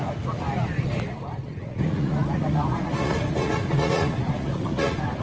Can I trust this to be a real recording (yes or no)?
no